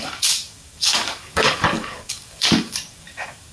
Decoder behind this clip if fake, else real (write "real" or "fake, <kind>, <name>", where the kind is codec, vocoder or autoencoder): fake, codec, DAC